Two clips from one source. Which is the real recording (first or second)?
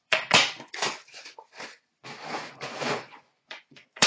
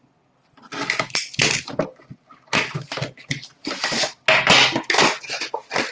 second